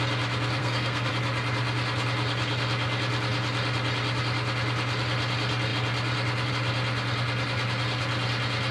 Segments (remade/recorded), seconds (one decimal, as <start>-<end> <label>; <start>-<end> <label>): 0.0-0.6 recorded; 0.6-1.1 remade; 1.1-8.7 recorded